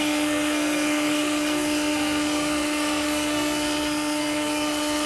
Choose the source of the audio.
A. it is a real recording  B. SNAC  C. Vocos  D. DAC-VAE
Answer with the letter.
B